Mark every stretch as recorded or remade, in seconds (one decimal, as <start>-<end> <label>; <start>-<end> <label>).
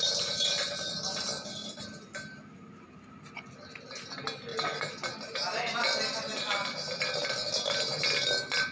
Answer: 0.0-8.7 recorded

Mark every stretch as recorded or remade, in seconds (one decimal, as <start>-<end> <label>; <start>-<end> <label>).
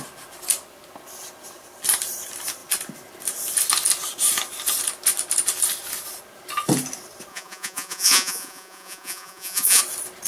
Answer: 0.0-7.3 recorded; 7.3-9.8 remade; 9.8-10.3 recorded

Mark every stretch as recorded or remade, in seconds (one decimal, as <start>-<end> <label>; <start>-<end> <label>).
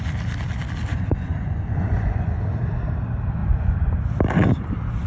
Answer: 0.0-0.9 recorded; 0.9-2.3 remade; 2.3-3.4 recorded; 3.4-4.0 remade; 4.0-5.1 recorded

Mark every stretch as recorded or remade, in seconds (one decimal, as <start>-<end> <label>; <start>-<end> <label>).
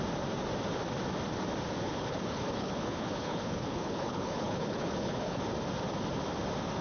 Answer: 0.0-1.8 recorded; 1.8-5.4 remade; 5.4-6.8 recorded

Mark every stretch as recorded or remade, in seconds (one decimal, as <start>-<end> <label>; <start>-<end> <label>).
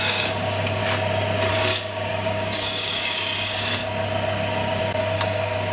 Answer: 0.0-0.8 remade; 0.8-1.5 recorded; 1.5-3.8 remade; 3.8-4.8 recorded; 4.8-5.7 remade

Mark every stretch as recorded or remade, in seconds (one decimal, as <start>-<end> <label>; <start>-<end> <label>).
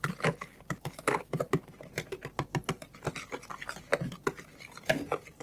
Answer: 0.0-5.4 recorded